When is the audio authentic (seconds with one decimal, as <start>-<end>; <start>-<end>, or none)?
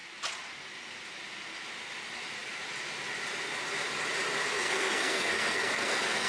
0.0-4.4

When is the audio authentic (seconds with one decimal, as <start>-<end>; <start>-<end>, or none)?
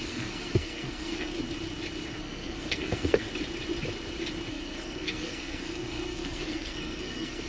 1.3-2.2; 3.3-4.5